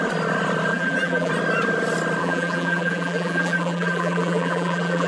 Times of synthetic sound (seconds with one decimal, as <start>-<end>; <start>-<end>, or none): 0.7-1.3; 2.2-5.1